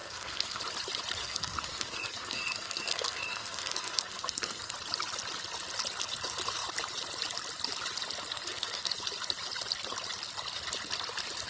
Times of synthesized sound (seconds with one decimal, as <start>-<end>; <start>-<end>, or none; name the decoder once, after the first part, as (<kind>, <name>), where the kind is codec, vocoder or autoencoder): 0.0-0.6 (codec, SNAC); 1.2-4.7; 8.3-8.9